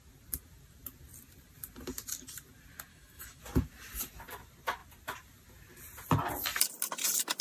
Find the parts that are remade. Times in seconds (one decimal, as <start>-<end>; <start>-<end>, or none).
2.9-3.4